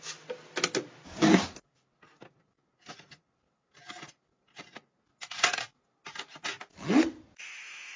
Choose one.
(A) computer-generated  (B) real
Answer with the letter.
B